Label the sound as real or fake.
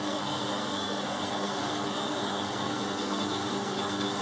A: fake